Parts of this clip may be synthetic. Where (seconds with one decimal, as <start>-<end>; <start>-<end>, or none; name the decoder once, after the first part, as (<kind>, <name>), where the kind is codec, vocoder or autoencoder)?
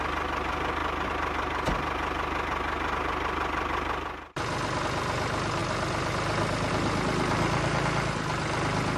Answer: none